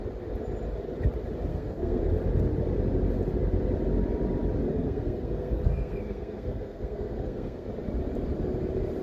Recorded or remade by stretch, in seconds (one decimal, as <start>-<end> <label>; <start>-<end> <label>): 0.0-1.5 recorded; 1.5-2.0 remade; 2.0-4.7 recorded; 4.7-7.7 remade; 7.7-9.0 recorded